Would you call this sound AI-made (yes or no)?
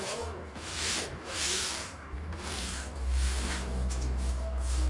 yes